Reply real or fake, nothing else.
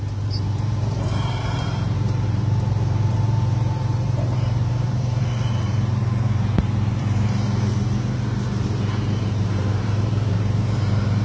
fake